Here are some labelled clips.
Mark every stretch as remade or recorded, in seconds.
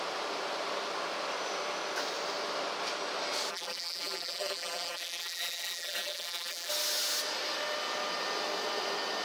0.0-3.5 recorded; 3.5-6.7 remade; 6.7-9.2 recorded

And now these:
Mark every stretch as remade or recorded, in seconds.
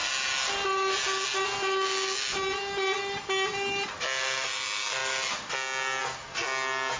0.0-7.0 recorded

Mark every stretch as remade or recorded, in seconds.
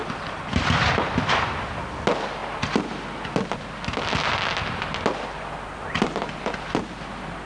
0.0-7.5 recorded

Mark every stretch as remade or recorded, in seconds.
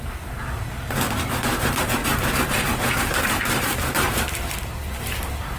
0.0-5.6 remade